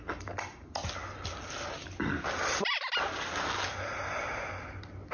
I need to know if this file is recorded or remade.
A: recorded